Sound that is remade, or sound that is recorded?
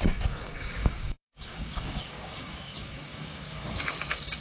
remade